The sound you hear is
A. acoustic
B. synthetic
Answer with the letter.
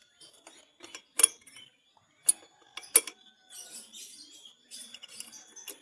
A